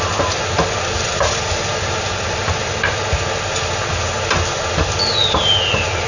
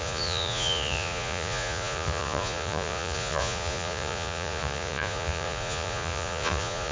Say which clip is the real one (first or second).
first